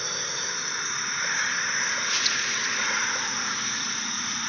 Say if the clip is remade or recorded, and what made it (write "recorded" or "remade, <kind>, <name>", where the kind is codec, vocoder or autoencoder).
remade, vocoder, Vocos